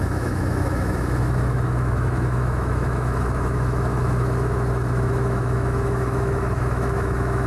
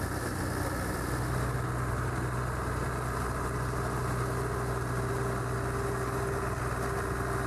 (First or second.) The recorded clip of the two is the second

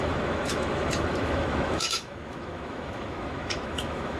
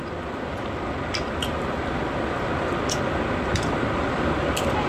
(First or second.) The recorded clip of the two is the second